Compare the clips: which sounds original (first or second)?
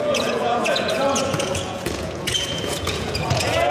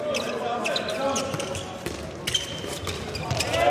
second